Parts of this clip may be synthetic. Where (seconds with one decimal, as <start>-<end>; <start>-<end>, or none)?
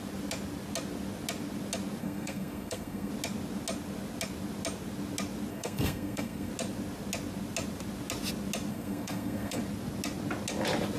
2.0-3.1; 5.5-6.5; 8.7-9.6